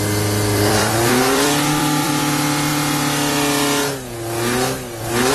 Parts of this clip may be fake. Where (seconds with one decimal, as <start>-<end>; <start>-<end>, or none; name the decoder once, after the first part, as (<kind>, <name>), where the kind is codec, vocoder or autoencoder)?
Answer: 0.5-2.2 (vocoder, BigVGAN v2)

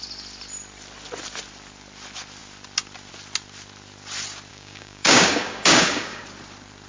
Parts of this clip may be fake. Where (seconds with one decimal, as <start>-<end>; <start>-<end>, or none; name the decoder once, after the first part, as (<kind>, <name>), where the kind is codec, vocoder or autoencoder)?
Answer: 4.5-6.2 (codec, DAC)

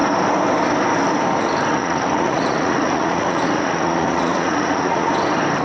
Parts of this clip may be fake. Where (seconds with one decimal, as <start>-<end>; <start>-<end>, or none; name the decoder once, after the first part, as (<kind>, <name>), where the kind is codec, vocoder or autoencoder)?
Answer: 1.7-5.1 (vocoder, Vocos)